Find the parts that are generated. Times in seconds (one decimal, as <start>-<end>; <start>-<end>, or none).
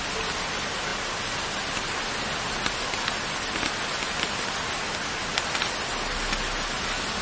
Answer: none